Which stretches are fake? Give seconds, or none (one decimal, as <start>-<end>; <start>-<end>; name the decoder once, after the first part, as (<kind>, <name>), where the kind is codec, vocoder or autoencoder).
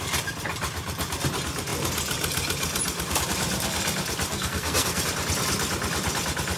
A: 4.3-5.0 (codec, SNAC)